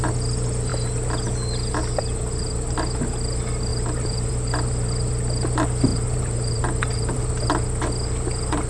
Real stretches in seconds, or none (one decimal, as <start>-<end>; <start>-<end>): 0.0-3.7; 4.3-5.9; 7.2-8.7